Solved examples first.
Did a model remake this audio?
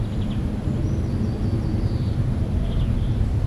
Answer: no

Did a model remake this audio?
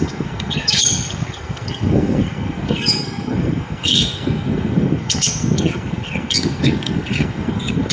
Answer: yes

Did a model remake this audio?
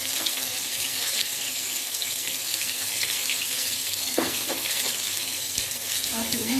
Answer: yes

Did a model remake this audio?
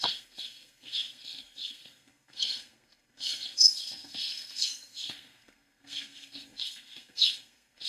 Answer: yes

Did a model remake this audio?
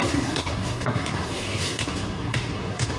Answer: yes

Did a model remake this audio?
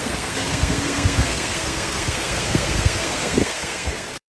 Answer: yes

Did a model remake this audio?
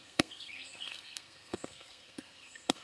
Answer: yes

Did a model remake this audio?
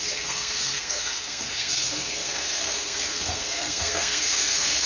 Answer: yes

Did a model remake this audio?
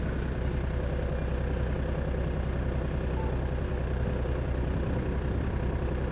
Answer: no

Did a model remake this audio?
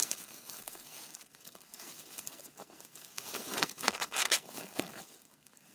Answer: yes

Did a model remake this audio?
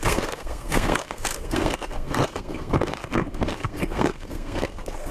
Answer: yes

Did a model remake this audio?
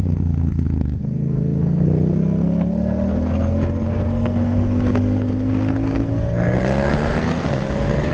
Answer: yes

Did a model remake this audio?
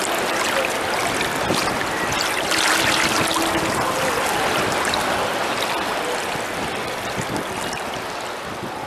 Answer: no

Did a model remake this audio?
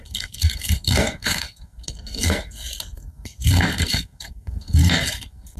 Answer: yes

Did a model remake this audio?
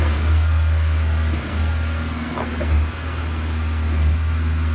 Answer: yes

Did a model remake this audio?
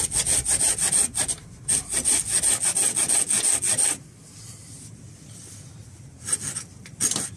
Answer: no